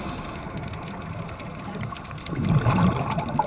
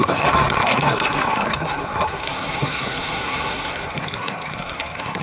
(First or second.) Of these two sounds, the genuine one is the first